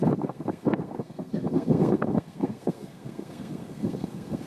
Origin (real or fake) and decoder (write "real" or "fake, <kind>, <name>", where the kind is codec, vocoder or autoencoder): fake, codec, SNAC